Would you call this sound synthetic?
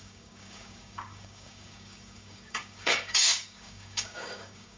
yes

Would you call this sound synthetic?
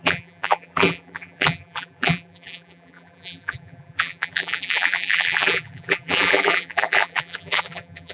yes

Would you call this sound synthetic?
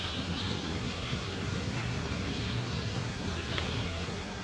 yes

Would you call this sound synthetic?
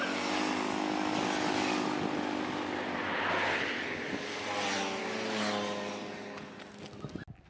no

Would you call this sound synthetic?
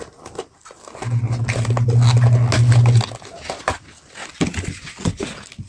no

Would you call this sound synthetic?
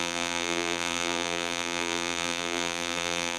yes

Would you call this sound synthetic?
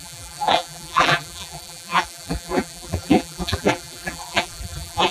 yes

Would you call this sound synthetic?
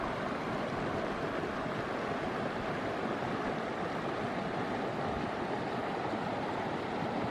no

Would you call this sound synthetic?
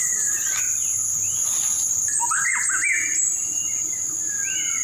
no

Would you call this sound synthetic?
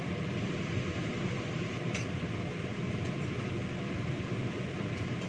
yes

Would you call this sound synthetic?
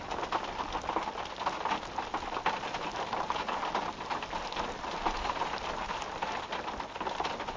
no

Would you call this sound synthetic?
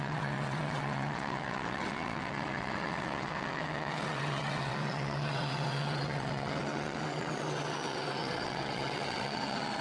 yes